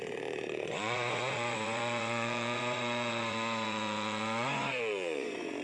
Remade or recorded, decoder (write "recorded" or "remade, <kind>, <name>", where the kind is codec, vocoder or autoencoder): remade, vocoder, Vocos